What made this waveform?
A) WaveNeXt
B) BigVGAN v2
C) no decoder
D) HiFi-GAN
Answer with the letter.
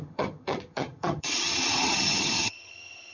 D